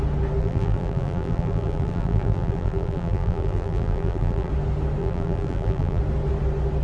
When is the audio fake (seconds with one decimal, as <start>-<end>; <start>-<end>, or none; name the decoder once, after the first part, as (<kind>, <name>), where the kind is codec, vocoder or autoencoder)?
0.4-4.5 (vocoder, BigVGAN v2); 5.0-6.0